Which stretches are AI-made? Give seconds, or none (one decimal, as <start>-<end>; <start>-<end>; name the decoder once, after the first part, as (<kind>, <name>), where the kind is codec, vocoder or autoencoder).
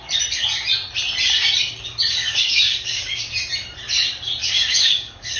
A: 2.2-3.2 (codec, DAC); 4.4-5.4